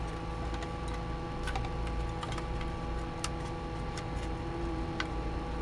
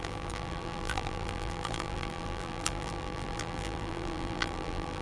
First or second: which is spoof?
second